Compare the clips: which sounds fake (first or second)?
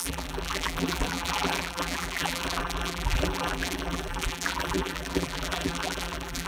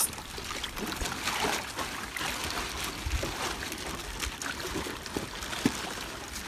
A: first